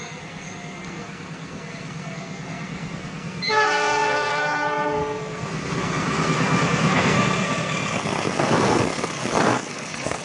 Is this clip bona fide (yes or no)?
no